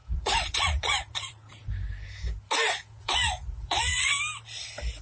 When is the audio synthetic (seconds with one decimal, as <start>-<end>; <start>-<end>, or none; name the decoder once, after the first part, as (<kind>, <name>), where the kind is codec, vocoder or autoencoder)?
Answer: 0.0-1.7 (vocoder, Vocos); 2.8-4.1